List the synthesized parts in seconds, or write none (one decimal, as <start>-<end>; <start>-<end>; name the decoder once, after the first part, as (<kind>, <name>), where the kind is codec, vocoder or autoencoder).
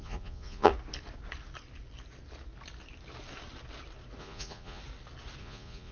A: 0.0-0.7 (vocoder, Vocos); 4.2-4.8; 5.4-5.9